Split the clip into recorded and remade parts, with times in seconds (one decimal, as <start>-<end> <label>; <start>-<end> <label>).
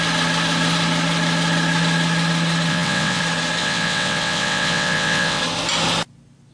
0.0-2.7 recorded; 2.7-3.2 remade; 3.2-3.6 recorded; 3.6-5.4 remade; 5.4-6.5 recorded